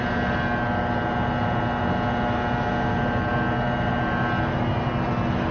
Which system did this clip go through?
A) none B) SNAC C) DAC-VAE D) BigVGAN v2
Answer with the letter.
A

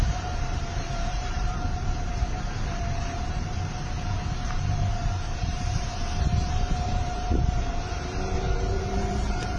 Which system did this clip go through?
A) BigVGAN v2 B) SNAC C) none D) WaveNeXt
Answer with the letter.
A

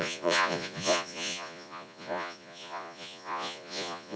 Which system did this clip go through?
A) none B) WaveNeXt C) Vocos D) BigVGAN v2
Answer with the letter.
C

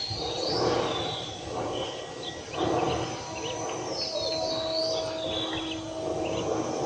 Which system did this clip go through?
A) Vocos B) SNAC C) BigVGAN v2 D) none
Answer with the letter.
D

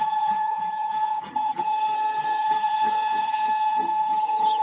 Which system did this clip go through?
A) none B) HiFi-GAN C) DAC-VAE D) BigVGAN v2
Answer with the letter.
B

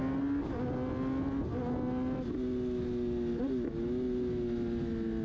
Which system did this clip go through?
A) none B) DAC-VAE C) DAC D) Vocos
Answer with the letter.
A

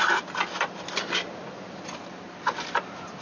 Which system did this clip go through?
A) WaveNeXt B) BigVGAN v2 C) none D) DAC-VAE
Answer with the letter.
C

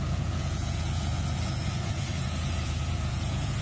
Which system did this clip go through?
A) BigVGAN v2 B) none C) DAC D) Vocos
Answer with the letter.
D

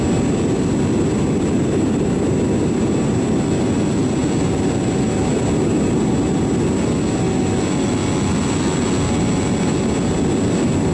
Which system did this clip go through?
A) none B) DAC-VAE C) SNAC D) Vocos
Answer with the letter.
A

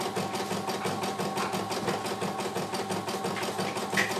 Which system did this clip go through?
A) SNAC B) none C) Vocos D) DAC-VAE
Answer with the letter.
B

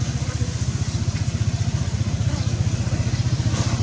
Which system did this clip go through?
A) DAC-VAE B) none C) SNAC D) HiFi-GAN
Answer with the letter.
B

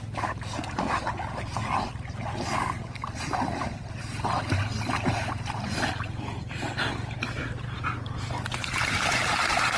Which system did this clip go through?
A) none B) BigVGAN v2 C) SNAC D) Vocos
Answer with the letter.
A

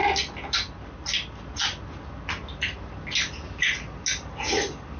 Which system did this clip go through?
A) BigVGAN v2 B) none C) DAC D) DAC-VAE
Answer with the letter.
B